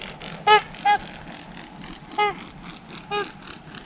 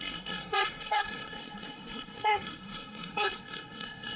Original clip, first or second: first